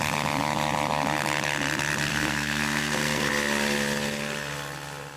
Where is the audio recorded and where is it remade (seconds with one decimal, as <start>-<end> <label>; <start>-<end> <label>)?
0.0-2.1 recorded; 2.1-3.3 remade; 3.3-5.2 recorded